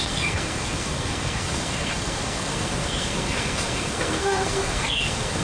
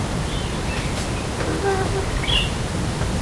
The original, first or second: second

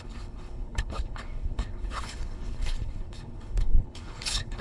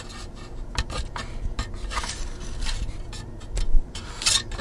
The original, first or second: second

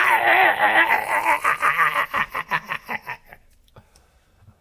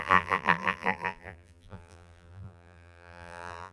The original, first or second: first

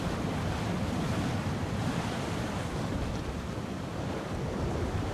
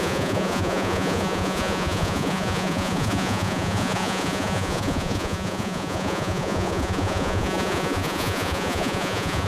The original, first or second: first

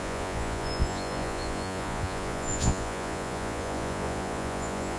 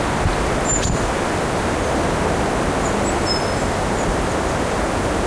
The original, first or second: second